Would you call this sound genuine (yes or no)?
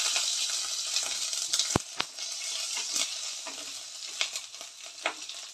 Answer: yes